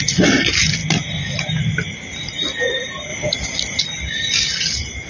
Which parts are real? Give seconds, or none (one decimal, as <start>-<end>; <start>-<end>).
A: 0.0-5.1